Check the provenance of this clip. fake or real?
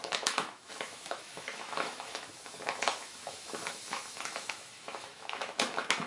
fake